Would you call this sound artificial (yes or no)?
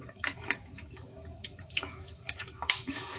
yes